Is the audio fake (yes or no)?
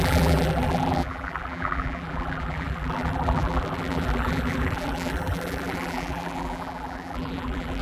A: yes